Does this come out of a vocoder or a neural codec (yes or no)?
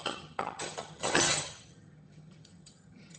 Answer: yes